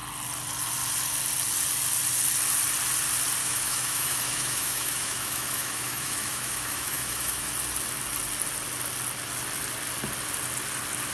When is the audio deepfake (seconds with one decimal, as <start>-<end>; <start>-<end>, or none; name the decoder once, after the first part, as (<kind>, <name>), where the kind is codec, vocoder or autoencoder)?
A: 3.4-7.5 (autoencoder, DAC-VAE)